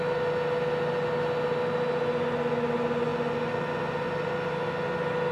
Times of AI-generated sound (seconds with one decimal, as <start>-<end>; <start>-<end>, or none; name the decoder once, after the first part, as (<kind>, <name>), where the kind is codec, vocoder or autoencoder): none